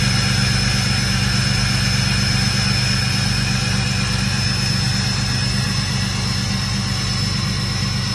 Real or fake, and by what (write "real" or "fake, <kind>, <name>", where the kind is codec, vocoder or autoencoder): real